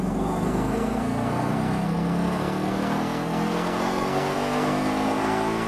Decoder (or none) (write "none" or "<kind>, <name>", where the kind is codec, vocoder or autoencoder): codec, SNAC